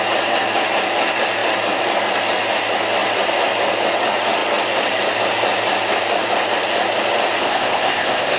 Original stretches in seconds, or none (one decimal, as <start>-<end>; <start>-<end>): 0.0-7.4